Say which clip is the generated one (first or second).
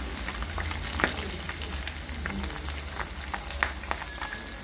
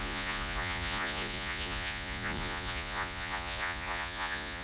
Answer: second